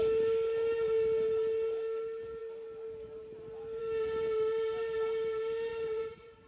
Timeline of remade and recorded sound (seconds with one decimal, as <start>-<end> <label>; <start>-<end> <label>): 0.0-5.7 recorded; 5.7-6.5 remade